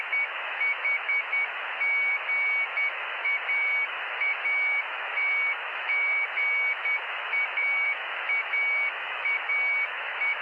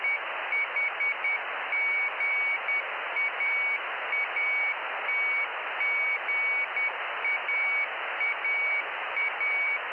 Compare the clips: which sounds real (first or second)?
second